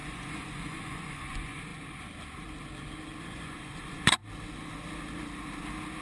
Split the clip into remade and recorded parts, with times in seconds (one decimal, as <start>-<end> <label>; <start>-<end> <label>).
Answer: 0.0-1.7 remade; 1.7-3.2 recorded; 3.2-4.2 remade; 4.2-6.0 recorded